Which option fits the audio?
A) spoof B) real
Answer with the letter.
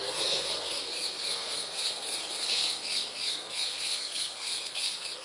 A